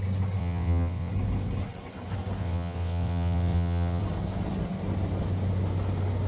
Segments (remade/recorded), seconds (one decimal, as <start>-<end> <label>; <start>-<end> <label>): 0.0-0.4 recorded; 0.4-1.1 remade; 1.1-2.4 recorded; 2.4-4.0 remade; 4.0-6.3 recorded